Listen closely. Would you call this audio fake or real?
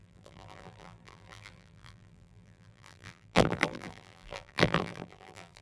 fake